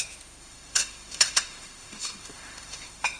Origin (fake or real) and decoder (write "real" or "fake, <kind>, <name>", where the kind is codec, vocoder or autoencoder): fake, autoencoder, DAC-VAE